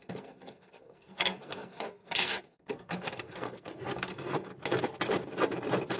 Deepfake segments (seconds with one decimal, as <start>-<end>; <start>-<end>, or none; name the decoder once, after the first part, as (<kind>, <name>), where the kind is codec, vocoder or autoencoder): 0.0-4.5 (codec, SNAC)